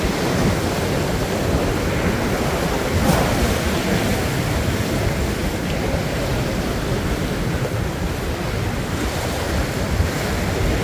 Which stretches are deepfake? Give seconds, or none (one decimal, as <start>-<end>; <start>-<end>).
5.4-6.9